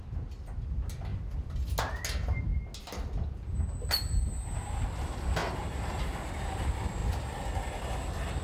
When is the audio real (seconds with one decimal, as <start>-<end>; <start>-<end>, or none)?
0.0-8.4